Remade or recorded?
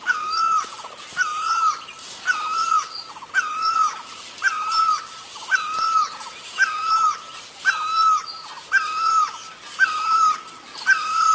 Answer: recorded